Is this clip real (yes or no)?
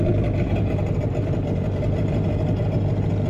yes